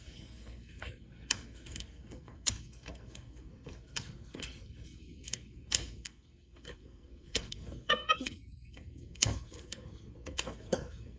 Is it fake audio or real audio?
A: fake